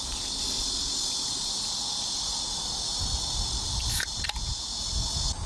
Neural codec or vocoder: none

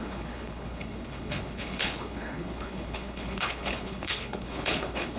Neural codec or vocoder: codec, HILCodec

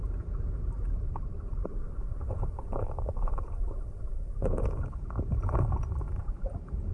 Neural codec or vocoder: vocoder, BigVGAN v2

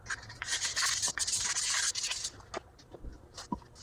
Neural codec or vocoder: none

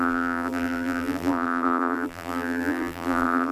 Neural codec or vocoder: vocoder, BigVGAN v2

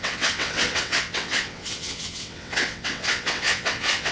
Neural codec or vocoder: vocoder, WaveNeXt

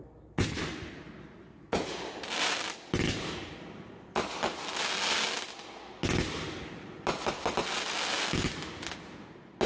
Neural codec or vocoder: none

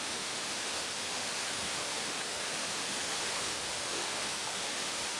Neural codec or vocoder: autoencoder, DAC-VAE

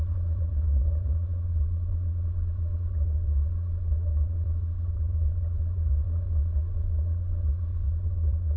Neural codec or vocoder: vocoder, Vocos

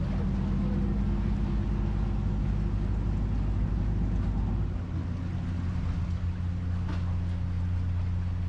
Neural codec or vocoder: none